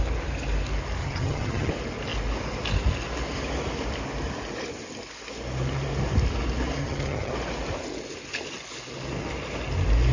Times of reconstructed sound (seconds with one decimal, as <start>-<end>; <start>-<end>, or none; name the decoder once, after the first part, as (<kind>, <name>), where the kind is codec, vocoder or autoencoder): 1.0-1.7 (vocoder, HiFi-GAN); 6.8-7.3